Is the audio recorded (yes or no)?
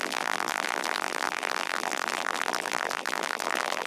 no